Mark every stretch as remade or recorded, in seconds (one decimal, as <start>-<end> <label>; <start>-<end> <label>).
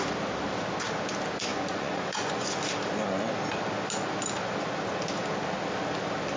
0.0-1.5 recorded; 1.5-2.6 remade; 2.6-6.4 recorded